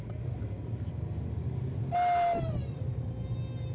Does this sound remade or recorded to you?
recorded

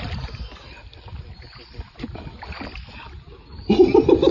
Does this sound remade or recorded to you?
recorded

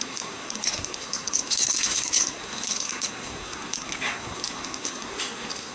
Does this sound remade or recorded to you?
remade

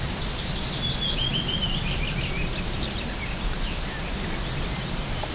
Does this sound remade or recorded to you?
recorded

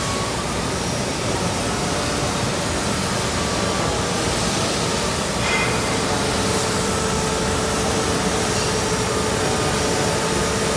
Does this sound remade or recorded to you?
recorded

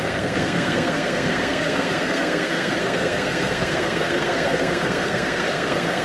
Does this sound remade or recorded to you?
remade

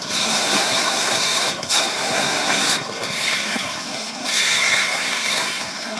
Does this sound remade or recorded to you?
remade